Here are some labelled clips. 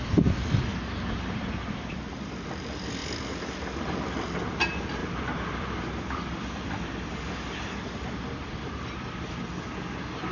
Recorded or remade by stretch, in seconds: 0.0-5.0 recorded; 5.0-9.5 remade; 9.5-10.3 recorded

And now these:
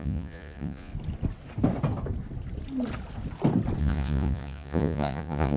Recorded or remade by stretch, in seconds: 0.0-0.9 remade; 0.9-3.8 recorded; 3.8-5.6 remade